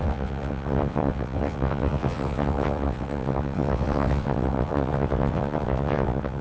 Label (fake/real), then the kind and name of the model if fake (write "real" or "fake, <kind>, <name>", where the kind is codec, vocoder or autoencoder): fake, vocoder, WaveNeXt